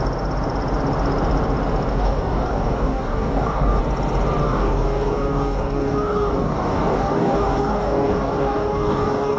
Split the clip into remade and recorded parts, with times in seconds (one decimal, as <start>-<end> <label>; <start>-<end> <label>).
0.0-1.9 recorded; 1.9-3.8 remade; 3.8-4.4 recorded; 4.4-9.4 remade